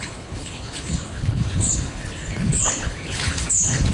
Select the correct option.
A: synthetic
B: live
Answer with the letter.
A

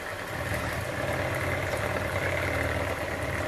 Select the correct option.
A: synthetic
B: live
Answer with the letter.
B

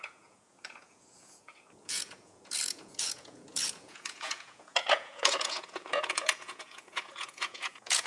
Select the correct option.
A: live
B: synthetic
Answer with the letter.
B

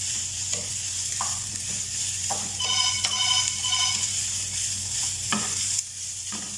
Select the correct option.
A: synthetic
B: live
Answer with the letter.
A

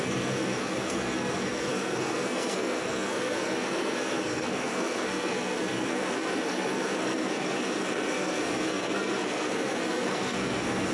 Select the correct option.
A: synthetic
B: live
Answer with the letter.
A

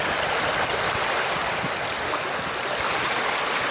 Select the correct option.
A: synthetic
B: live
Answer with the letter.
B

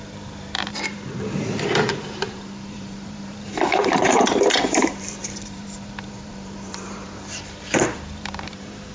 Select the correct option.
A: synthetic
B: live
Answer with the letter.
A